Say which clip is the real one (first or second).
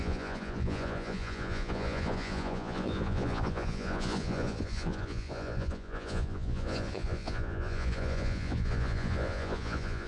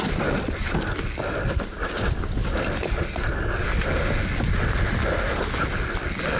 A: second